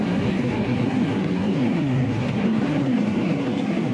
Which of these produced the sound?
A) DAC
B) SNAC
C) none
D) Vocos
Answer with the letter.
B